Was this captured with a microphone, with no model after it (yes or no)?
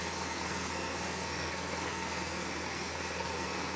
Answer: no